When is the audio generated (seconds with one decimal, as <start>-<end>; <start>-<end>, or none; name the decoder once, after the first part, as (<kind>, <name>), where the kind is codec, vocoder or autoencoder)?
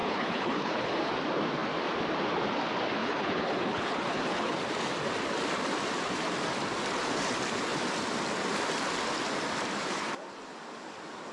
0.0-1.1 (codec, HILCodec); 3.0-4.5